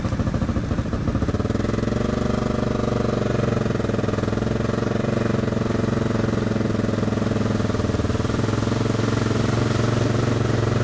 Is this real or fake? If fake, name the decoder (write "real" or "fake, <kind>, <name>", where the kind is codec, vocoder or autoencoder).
real